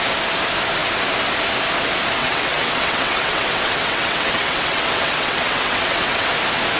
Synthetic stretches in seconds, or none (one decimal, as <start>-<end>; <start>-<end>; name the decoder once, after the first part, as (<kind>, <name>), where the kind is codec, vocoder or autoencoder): 2.2-6.3 (vocoder, WaveNeXt)